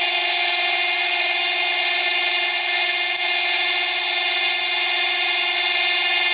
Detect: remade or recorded recorded